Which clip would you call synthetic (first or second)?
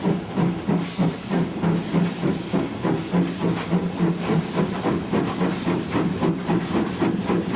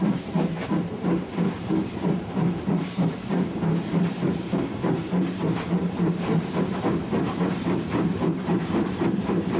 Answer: second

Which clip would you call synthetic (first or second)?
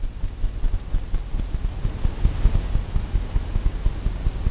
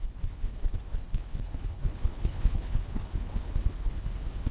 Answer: second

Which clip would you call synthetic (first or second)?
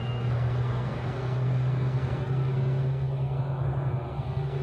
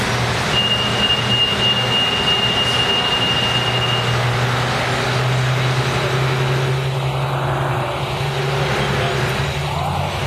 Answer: first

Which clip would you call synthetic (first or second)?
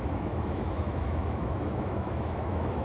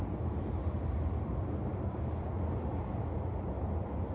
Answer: first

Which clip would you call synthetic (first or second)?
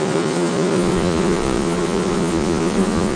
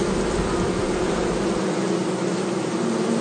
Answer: first